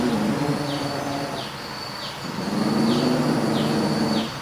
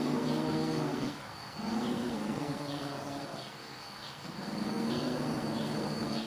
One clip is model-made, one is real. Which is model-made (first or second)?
second